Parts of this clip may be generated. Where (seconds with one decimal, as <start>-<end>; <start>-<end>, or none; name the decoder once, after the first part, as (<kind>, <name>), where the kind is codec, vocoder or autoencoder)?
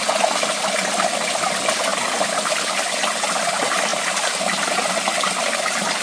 none